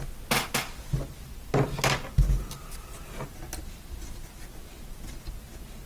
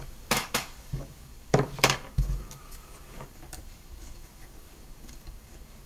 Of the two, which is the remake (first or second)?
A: second